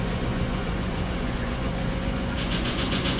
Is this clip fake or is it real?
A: fake